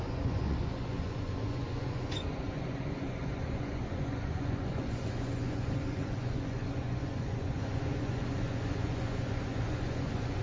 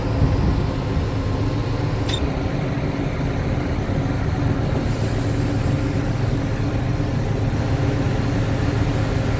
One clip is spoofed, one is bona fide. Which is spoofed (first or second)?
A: first